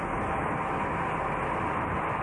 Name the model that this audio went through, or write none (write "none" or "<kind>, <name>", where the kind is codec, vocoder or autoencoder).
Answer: none